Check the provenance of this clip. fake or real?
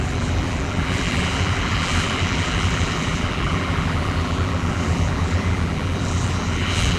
fake